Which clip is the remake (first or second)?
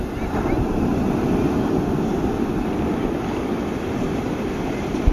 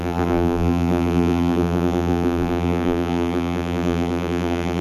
second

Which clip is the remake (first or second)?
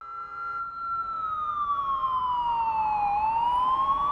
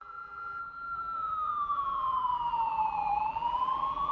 second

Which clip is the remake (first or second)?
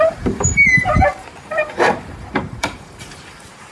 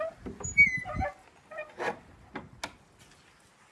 first